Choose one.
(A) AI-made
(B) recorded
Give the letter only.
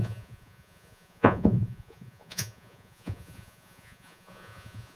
A